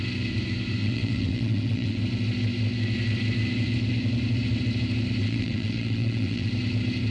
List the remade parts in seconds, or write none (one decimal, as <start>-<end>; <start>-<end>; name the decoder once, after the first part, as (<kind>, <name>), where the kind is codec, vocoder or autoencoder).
0.8-2.0 (vocoder, WaveNeXt); 5.2-6.5